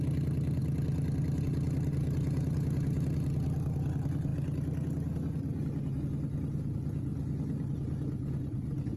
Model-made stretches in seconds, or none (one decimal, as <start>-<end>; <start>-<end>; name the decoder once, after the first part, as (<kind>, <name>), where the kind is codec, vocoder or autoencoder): none